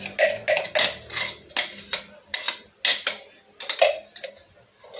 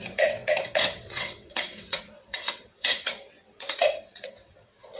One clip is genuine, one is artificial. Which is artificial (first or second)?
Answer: second